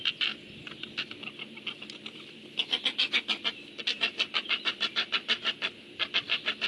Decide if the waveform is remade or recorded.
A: recorded